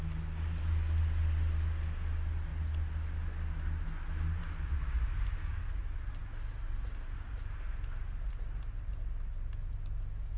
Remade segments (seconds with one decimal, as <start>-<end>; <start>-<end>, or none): none